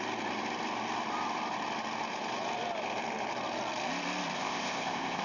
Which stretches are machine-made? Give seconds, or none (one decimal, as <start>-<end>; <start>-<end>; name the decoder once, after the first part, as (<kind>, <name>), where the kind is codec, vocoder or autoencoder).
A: 4.4-5.2 (codec, ZipCodec)